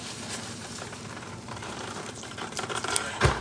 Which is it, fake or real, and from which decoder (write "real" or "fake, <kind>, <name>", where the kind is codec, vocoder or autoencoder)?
fake, vocoder, BigVGAN v2